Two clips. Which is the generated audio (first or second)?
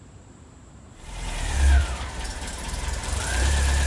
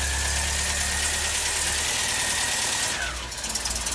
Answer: first